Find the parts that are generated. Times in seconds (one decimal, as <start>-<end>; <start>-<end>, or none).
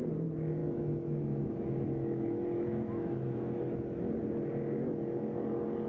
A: 0.6-4.1